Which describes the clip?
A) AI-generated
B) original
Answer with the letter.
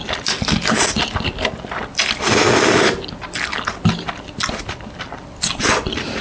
B